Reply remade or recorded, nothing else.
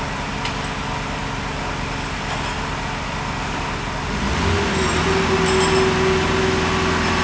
recorded